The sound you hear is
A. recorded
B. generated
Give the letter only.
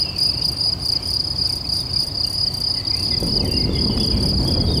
A